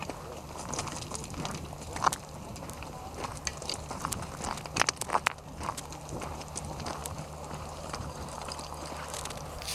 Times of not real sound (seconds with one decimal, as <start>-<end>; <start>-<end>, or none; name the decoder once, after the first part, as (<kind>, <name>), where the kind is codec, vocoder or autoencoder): 3.5-4.3 (vocoder, BigVGAN v2); 7.0-8.4